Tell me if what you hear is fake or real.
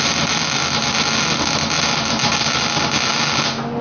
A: real